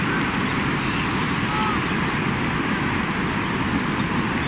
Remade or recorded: recorded